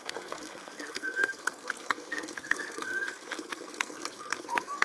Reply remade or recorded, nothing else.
remade